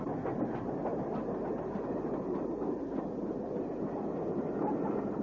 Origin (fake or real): real